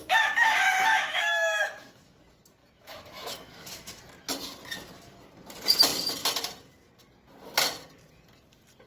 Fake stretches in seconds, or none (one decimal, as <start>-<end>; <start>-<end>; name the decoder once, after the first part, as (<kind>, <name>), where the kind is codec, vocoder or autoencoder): 0.0-2.2 (autoencoder, DAC-VAE); 2.6-4.0